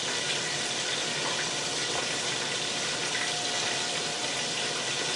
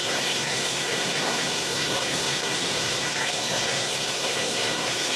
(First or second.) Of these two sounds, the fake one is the second